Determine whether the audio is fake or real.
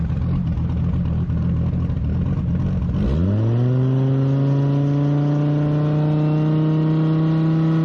real